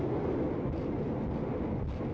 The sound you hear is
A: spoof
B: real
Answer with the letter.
B